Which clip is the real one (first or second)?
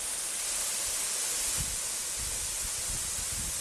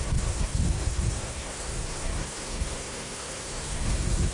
first